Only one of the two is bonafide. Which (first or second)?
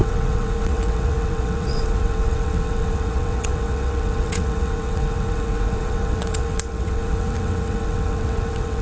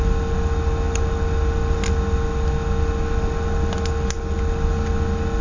second